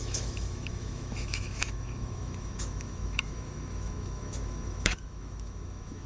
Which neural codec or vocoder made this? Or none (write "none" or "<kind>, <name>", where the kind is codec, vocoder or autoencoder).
autoencoder, DAC-VAE